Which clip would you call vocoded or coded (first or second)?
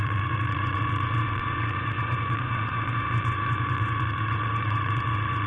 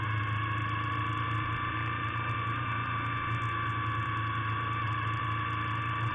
first